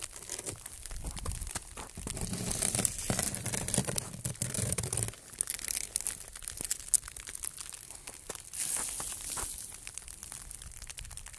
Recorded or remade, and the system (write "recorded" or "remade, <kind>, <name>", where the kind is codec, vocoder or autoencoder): recorded